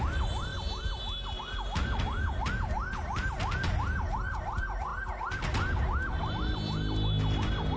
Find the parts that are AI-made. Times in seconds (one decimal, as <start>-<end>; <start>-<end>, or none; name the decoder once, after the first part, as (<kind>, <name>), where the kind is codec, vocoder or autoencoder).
none